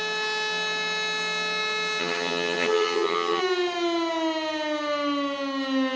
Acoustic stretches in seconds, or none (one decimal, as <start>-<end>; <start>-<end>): 0.0-2.0; 3.4-6.0